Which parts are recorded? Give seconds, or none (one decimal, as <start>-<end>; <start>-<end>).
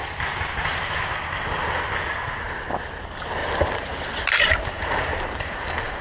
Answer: 0.9-3.4